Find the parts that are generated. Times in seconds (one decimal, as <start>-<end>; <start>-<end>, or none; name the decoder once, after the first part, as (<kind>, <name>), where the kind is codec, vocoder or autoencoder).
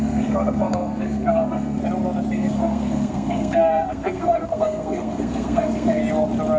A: 0.0-1.8 (codec, SNAC); 2.3-6.0